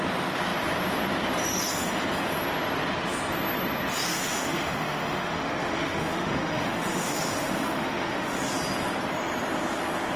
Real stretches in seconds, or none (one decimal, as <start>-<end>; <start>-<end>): 0.0-4.1; 8.4-10.2